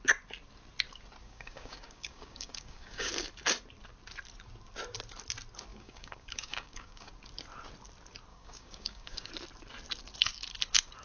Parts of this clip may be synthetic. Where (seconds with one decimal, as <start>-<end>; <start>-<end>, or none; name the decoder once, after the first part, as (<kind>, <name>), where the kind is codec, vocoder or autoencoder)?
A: 1.2-3.1 (codec, DAC); 5.7-7.1; 8.3-9.3